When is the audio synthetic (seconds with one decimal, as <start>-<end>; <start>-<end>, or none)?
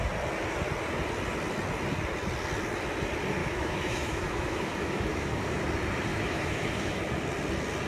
3.4-5.6; 6.1-7.0